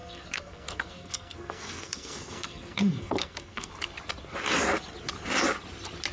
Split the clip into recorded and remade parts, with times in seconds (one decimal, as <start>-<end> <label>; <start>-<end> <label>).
0.0-3.7 remade; 3.7-6.1 recorded